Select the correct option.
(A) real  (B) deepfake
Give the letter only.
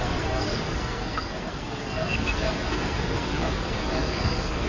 B